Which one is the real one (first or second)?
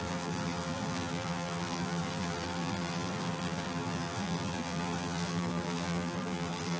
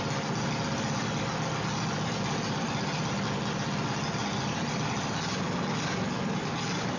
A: second